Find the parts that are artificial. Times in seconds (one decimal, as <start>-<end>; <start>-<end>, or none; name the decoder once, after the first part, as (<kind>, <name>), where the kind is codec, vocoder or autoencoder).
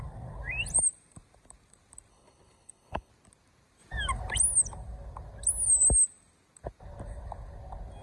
2.1-3.1 (codec, HILCodec)